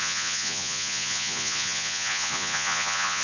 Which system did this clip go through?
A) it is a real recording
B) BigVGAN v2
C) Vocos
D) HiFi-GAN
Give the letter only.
C